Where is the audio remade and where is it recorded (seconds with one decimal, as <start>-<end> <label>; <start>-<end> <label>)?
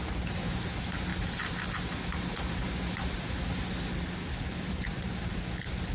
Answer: 0.0-4.2 recorded; 4.2-5.4 remade; 5.4-5.9 recorded